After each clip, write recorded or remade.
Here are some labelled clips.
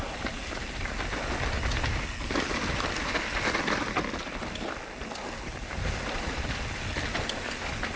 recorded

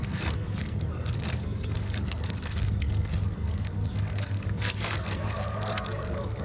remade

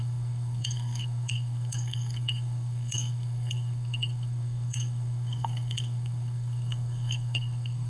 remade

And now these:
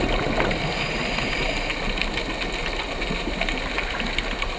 recorded